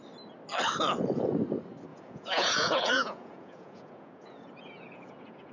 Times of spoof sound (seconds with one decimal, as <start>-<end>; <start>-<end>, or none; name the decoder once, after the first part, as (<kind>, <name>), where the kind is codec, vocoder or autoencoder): 1.9-5.5 (vocoder, Vocos)